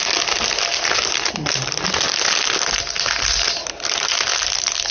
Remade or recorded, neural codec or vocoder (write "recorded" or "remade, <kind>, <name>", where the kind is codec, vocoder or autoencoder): recorded